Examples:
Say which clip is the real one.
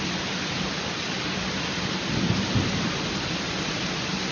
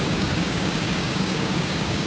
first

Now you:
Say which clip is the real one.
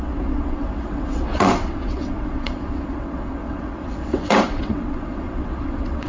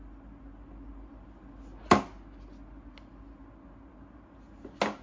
second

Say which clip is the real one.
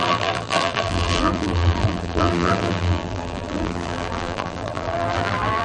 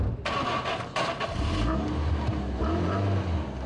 second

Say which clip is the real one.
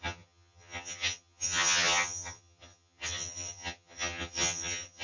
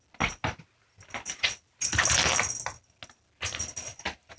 second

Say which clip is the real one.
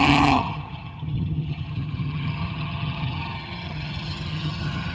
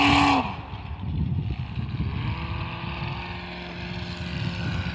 second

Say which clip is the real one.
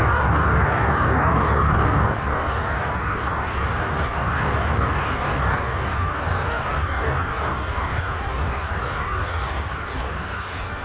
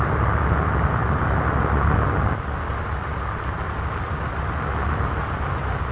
second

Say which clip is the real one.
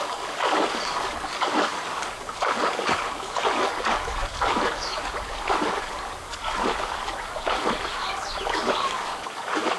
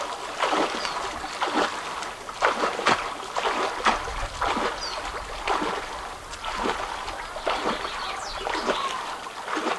second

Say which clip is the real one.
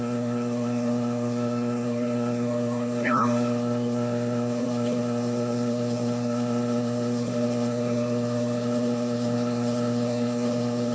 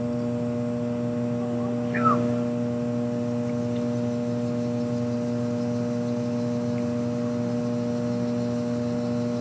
second